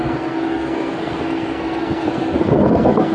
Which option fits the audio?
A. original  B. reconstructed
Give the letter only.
B